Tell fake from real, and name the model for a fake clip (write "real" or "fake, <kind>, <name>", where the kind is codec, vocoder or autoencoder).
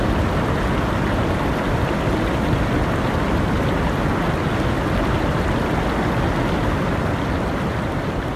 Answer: real